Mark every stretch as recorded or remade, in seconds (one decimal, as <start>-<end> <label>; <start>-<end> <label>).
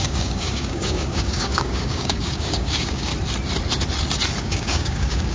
0.0-3.1 remade; 3.1-4.4 recorded; 4.4-5.3 remade